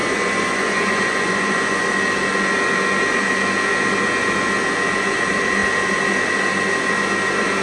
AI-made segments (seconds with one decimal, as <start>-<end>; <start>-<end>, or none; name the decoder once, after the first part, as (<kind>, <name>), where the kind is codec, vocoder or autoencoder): 0.0-1.9 (vocoder, Vocos)